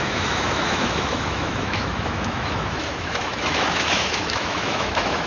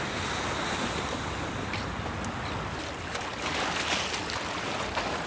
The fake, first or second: first